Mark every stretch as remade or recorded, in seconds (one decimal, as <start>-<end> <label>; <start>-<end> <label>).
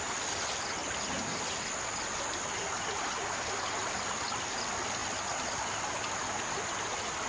0.0-7.3 recorded